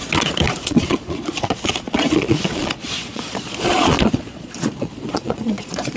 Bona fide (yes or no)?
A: no